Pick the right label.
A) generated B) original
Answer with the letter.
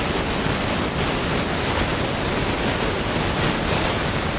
B